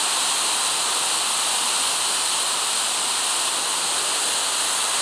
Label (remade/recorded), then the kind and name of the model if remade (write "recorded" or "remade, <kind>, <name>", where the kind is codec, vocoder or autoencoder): recorded